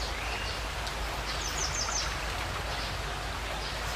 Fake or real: real